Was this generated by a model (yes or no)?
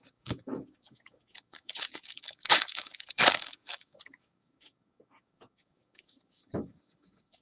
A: yes